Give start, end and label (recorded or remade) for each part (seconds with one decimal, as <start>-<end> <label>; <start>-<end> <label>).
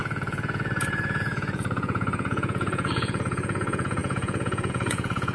0.0-5.3 remade